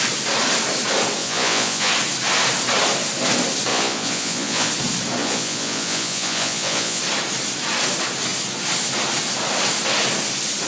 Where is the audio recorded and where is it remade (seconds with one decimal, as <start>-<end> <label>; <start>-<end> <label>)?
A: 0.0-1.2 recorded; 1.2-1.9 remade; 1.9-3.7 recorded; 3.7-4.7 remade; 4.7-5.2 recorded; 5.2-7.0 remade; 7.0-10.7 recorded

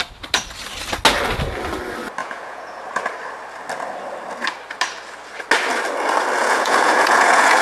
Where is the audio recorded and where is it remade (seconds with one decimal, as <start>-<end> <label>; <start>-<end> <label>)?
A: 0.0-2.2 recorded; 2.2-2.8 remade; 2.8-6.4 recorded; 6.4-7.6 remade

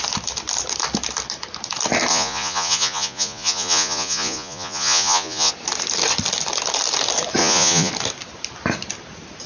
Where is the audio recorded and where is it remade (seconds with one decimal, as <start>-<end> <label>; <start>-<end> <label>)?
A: 0.0-2.1 recorded; 2.1-5.5 remade; 5.5-7.4 recorded; 7.4-7.9 remade; 7.9-9.5 recorded